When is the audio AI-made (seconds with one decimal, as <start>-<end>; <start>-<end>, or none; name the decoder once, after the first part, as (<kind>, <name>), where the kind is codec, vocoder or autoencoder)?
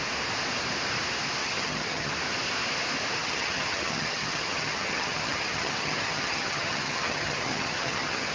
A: 1.4-2.1 (vocoder, HiFi-GAN); 3.2-8.3